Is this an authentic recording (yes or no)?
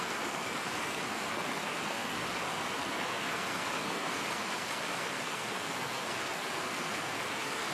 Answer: no